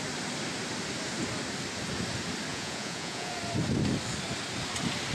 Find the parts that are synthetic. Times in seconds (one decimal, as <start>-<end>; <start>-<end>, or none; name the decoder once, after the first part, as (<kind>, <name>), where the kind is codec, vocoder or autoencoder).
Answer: 2.5-3.3 (vocoder, Vocos)